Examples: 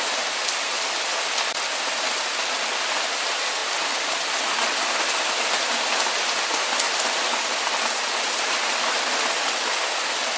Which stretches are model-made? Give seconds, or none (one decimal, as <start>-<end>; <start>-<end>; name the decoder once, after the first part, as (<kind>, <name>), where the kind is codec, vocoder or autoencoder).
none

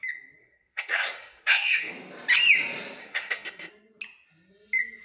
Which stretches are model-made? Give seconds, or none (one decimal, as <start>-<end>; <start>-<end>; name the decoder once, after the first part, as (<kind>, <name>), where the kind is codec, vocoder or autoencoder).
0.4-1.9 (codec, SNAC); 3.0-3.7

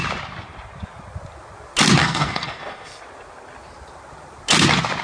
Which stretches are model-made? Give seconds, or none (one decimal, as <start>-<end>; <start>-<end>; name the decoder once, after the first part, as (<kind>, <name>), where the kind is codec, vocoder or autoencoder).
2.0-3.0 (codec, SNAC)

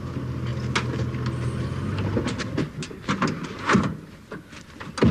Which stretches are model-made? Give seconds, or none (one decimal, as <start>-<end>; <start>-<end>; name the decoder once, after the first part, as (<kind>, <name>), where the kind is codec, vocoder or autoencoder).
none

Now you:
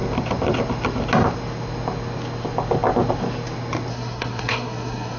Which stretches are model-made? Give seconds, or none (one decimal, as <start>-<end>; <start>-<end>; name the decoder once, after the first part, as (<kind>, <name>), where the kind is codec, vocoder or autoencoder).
3.9-5.2 (codec, SNAC)

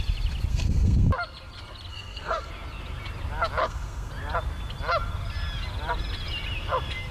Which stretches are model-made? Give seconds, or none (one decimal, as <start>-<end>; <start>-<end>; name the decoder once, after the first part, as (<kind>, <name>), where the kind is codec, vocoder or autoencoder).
0.5-1.1 (codec, SNAC); 1.9-2.5; 3.6-4.1